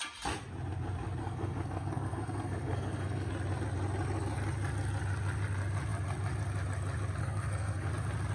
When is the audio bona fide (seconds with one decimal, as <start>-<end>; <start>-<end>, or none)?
0.0-1.2; 3.3-7.2; 7.9-8.3